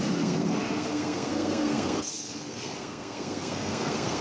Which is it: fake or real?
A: fake